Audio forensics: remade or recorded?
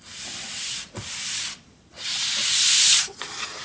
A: remade